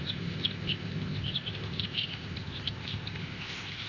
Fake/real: fake